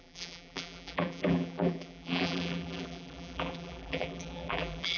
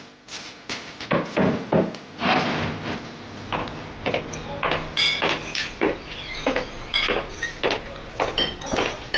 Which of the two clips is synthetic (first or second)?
first